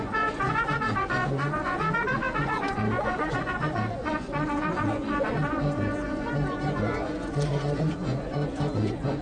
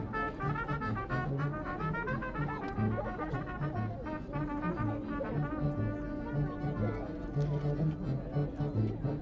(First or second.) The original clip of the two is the second